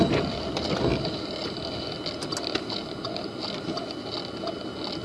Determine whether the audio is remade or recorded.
recorded